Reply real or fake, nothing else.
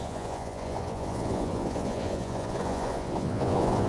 fake